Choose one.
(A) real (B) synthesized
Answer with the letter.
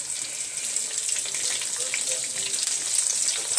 A